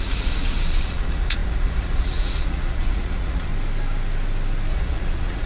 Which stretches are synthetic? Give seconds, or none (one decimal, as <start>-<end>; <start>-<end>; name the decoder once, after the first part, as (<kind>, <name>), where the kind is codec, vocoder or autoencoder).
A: 0.0-3.5 (vocoder, Vocos); 4.7-5.5